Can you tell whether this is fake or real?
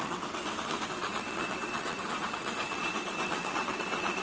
fake